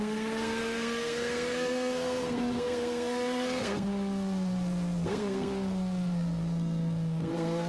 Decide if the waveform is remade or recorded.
remade